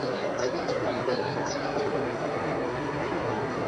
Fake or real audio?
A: fake